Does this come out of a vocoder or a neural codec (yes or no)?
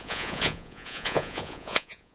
yes